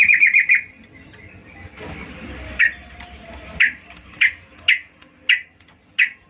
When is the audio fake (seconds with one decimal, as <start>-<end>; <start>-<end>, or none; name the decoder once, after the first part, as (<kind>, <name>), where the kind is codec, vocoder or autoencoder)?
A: 1.4-4.1 (vocoder, BigVGAN v2)